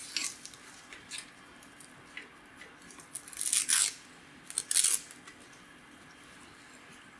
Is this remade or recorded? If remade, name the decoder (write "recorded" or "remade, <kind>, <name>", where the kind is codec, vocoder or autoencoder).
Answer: recorded